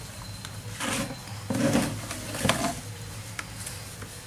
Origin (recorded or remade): recorded